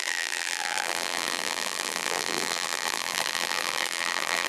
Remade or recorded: remade